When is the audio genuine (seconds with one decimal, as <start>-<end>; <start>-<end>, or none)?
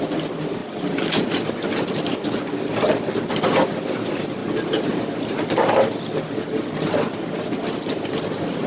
0.6-1.7; 4.4-5.2